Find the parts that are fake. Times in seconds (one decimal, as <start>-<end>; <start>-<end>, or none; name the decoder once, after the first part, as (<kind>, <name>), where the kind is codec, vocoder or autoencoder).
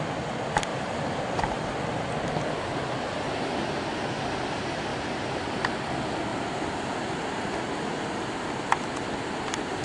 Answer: 0.7-1.5 (vocoder, BigVGAN v2); 4.9-5.5; 6.3-7.5